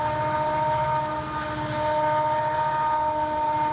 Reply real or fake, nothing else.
real